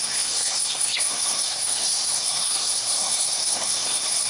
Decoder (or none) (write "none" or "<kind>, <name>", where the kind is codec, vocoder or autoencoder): codec, SNAC